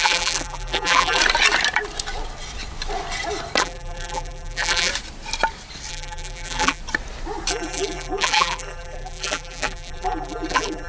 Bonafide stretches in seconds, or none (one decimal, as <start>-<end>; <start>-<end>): 1.2-3.6; 4.9-5.9; 6.8-7.5